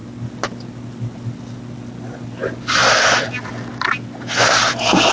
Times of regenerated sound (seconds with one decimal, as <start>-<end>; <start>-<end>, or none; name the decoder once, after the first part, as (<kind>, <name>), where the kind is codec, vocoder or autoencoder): none